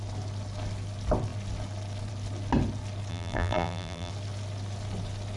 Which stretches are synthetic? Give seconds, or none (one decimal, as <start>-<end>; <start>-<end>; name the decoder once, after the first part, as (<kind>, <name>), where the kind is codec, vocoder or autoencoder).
3.1-4.1 (vocoder, BigVGAN v2)